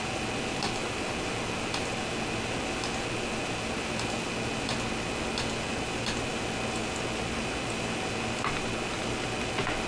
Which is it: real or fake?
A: real